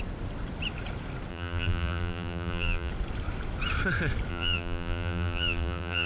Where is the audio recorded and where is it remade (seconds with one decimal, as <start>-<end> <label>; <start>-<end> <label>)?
0.0-1.3 recorded; 1.3-2.9 remade; 2.9-4.3 recorded; 4.3-6.1 remade